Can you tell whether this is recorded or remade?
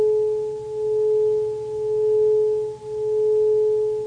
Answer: recorded